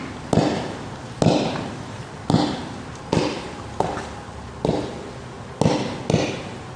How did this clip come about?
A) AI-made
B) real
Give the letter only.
B